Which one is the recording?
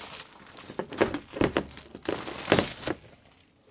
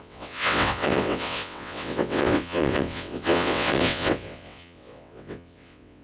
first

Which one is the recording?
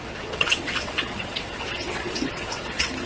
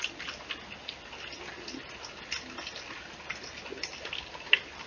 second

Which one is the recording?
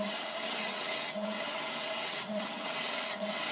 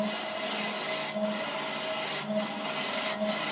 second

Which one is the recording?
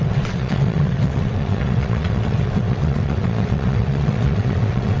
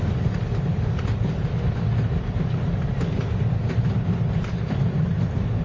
second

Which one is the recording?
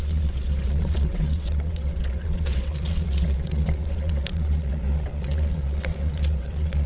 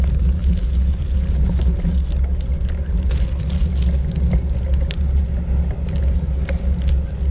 second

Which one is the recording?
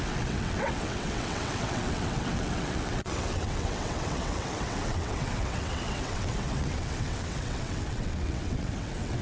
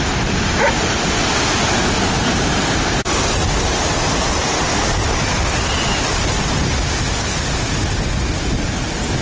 second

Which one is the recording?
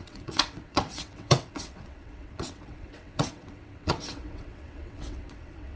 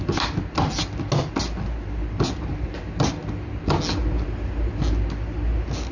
second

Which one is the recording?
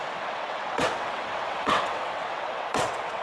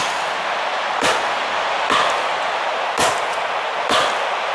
second